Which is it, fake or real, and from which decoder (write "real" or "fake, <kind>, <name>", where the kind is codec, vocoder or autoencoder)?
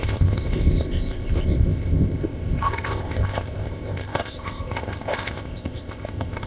fake, codec, ZipCodec